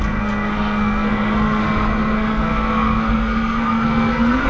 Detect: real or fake fake